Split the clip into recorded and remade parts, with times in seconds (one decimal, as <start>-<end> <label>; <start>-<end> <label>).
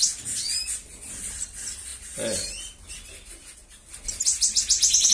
0.0-5.1 recorded